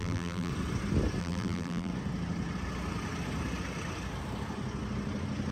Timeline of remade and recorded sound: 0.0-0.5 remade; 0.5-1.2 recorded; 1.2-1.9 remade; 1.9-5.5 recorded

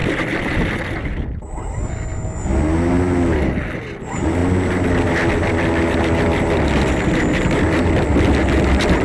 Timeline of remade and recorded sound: 0.0-1.9 remade; 1.9-9.0 recorded

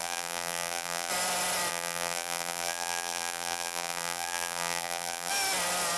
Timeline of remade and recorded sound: 0.0-1.1 remade; 1.1-1.7 recorded; 1.7-5.3 remade; 5.3-6.0 recorded

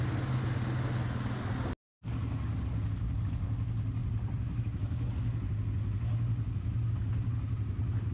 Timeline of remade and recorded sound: 0.0-4.0 recorded; 4.0-4.6 remade; 4.6-8.1 recorded